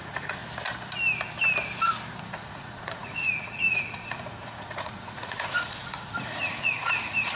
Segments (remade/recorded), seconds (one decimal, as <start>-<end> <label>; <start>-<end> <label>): 0.0-0.4 remade; 0.4-2.2 recorded; 2.2-7.4 remade